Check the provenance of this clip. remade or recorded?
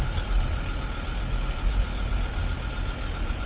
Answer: recorded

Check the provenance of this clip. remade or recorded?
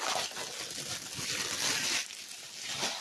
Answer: recorded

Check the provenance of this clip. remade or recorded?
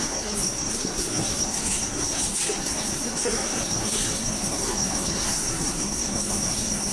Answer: remade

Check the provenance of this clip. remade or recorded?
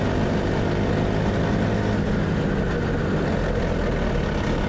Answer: recorded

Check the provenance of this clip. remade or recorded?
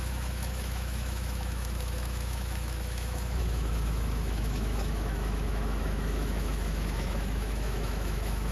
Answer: remade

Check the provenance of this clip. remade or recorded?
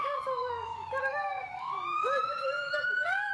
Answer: remade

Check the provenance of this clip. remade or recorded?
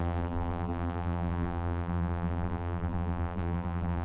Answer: remade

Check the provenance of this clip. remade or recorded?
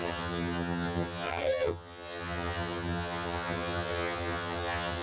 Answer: remade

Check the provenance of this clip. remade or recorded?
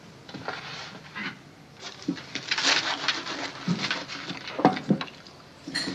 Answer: recorded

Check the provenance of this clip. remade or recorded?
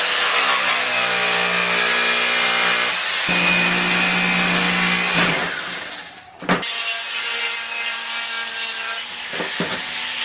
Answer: recorded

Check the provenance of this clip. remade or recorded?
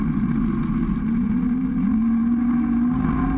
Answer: recorded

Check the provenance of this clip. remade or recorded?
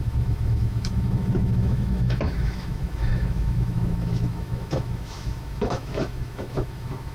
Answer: remade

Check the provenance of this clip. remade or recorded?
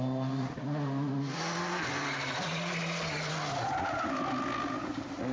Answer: recorded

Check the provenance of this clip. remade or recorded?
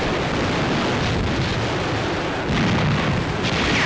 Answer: recorded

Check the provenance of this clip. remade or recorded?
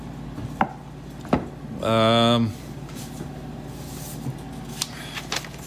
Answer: recorded